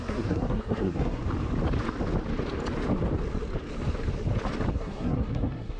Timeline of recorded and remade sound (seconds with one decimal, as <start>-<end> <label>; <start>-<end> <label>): 0.0-1.2 remade; 1.2-4.7 recorded; 4.7-5.8 remade

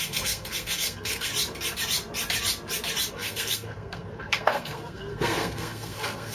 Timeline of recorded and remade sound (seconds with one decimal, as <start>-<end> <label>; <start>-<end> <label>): 0.0-1.3 remade; 1.3-3.1 recorded; 3.1-6.3 remade

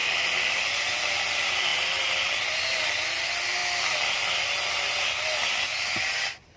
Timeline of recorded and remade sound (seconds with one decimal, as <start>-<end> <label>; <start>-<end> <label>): 0.0-0.8 remade; 0.8-1.7 recorded; 1.7-3.0 remade; 3.0-6.6 recorded

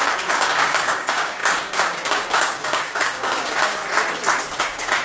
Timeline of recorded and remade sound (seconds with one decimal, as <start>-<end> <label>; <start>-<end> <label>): 0.0-3.8 remade; 3.8-4.6 recorded; 4.6-5.0 remade

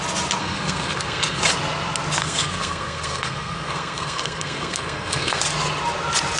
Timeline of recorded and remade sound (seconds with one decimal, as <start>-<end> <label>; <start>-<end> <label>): 0.0-0.4 recorded; 0.4-1.4 remade; 1.4-2.2 recorded; 2.2-5.4 remade; 5.4-6.4 recorded